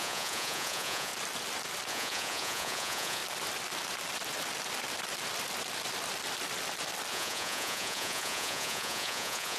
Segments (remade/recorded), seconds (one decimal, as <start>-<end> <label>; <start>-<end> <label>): 0.0-1.1 remade; 1.1-1.9 recorded; 1.9-3.2 remade; 3.2-7.1 recorded; 7.1-9.6 remade